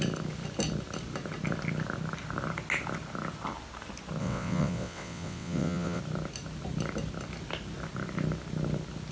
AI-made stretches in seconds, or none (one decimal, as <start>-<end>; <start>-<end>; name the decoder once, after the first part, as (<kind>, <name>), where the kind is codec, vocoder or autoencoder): 4.2-6.0 (vocoder, WaveNeXt)